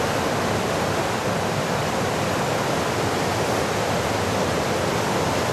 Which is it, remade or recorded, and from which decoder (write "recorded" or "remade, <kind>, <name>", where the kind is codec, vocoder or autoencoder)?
recorded